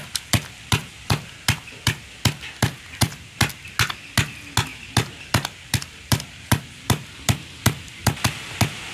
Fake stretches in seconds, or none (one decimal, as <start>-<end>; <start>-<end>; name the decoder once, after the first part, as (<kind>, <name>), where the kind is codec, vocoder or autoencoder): 0.0-3.5 (vocoder, BigVGAN v2); 4.7-8.2